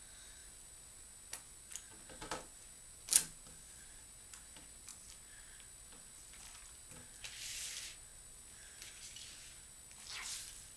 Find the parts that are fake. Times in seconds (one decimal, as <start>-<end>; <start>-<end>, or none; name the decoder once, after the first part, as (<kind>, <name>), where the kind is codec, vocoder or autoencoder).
none